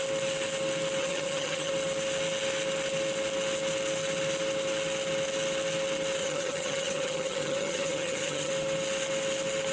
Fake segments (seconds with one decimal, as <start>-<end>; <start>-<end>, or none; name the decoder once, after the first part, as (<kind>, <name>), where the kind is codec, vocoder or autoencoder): 1.0-1.7 (vocoder, HiFi-GAN); 6.2-8.5